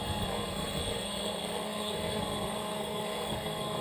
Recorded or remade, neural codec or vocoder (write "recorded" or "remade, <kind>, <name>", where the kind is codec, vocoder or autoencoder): remade, codec, SNAC